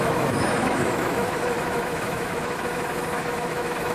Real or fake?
fake